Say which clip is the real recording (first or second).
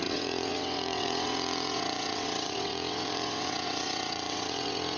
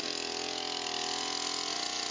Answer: second